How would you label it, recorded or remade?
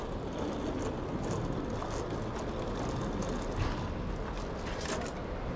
recorded